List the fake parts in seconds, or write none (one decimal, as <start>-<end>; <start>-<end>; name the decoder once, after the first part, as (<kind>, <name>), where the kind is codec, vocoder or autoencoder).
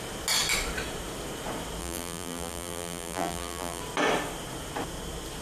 1.8-3.8 (vocoder, BigVGAN v2)